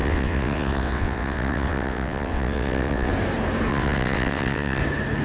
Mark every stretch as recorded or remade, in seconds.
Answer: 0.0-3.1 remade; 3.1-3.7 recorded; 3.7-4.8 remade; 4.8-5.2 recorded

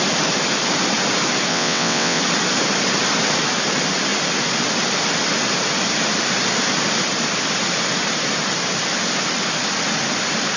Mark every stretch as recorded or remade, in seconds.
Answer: 0.0-1.5 recorded; 1.5-2.2 remade; 2.2-10.6 recorded

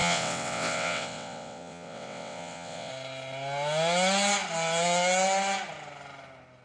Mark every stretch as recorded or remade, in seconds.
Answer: 0.0-2.9 remade; 2.9-6.6 recorded

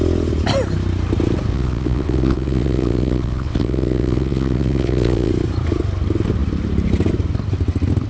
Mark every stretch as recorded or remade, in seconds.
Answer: 0.0-1.5 recorded; 1.5-5.3 remade; 5.3-8.1 recorded

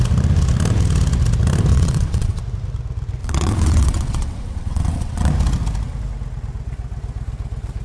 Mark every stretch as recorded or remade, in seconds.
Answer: 0.0-1.7 recorded; 1.7-2.4 remade; 2.4-3.2 recorded; 3.2-5.3 remade; 5.3-7.8 recorded

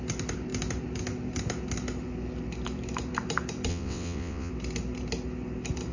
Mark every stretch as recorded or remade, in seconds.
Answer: 0.0-3.7 recorded; 3.7-4.5 remade; 4.5-5.9 recorded